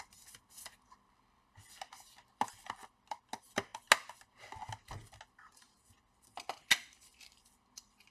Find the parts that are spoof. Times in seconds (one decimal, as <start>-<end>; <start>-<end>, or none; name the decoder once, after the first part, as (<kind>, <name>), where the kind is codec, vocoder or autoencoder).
none